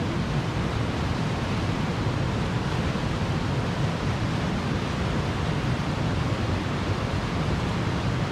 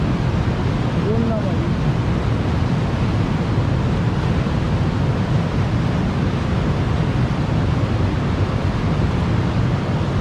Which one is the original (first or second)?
second